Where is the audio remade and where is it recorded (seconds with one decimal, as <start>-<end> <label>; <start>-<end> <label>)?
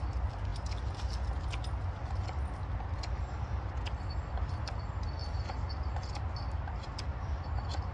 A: 0.0-7.9 recorded